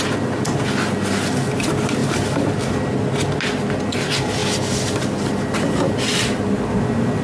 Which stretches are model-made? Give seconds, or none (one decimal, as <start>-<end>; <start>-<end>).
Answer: none